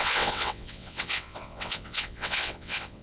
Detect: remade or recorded remade